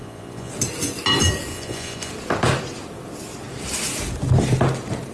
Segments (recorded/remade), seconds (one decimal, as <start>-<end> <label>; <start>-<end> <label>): 0.0-0.5 remade; 0.5-1.5 recorded; 1.5-2.1 remade; 2.1-5.1 recorded